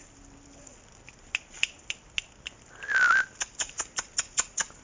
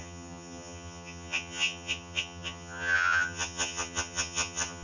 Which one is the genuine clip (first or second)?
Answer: first